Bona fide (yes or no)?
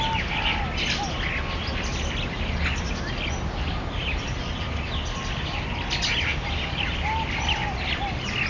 yes